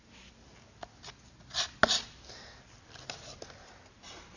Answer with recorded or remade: recorded